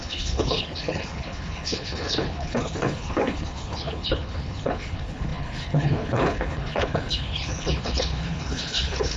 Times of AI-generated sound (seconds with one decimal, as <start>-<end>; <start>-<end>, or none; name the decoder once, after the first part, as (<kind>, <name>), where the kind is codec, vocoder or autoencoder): 0.0-9.2 (codec, HILCodec)